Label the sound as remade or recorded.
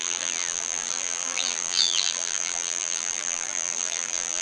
remade